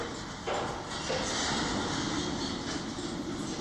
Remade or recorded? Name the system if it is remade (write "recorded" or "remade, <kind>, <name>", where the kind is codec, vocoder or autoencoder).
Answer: recorded